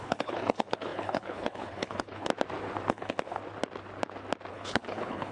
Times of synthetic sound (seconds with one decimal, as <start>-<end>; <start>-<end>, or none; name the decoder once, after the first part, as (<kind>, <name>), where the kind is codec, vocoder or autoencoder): 0.0-2.3 (codec, HILCodec); 2.9-3.4; 4.5-5.3